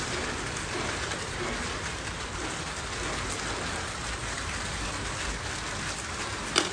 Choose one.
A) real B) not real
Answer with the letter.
A